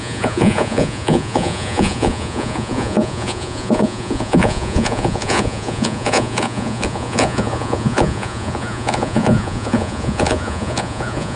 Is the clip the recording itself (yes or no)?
no